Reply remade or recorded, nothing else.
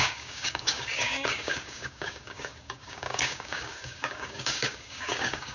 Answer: remade